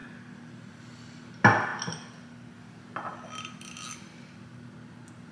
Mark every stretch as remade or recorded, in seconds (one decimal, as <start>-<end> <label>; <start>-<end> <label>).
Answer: 0.0-5.3 recorded